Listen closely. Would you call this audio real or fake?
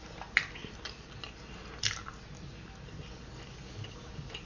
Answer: real